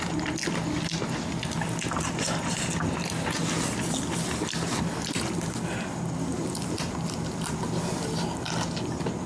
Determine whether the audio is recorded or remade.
recorded